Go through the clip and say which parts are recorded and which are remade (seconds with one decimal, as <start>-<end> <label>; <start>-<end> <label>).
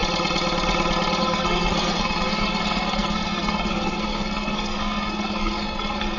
0.0-1.2 recorded; 1.2-6.2 remade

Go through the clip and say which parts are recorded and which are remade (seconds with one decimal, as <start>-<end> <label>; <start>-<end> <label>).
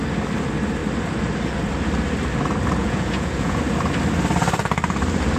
0.0-2.8 recorded; 2.8-3.6 remade; 3.6-5.4 recorded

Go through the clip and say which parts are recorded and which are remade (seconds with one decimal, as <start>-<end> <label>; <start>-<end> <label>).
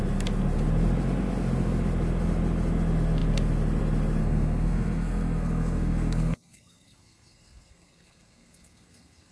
0.0-4.2 recorded; 4.2-9.3 remade